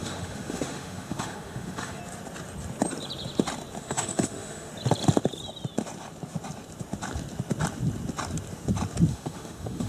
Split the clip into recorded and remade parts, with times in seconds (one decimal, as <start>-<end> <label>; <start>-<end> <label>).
0.0-2.0 remade; 2.0-3.8 recorded; 3.8-4.7 remade; 4.7-9.1 recorded; 9.1-9.9 remade